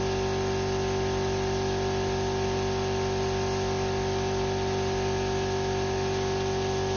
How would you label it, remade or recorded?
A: recorded